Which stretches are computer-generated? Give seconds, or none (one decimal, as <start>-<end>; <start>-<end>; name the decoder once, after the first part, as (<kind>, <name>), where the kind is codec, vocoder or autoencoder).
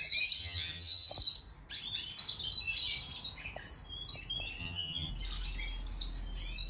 0.4-1.1 (vocoder, HiFi-GAN); 4.6-5.1